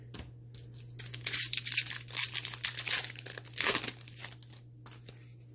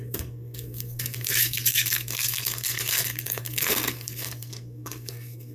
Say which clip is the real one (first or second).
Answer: first